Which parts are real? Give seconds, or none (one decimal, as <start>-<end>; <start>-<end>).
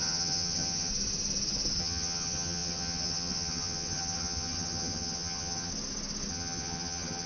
0.9-1.8; 5.7-6.3